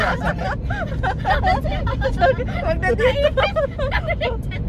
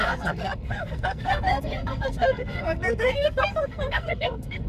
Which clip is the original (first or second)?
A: first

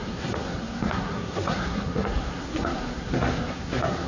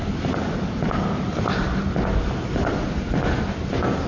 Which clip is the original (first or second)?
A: second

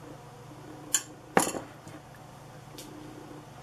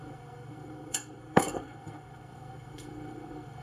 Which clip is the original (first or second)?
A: first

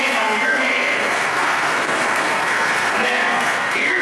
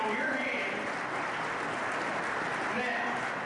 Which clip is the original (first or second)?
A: second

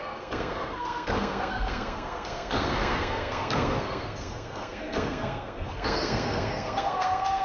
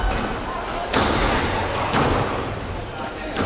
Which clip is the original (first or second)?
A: second